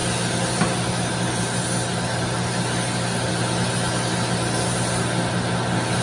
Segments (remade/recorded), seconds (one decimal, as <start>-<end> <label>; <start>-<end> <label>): 0.0-6.0 recorded